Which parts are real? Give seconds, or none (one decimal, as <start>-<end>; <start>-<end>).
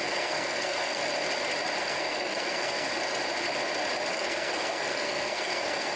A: 1.0-1.8; 2.9-4.1